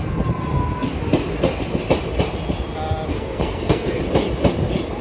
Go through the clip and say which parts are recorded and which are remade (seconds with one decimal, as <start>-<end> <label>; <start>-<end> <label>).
0.0-3.1 recorded; 3.1-4.0 remade; 4.0-5.0 recorded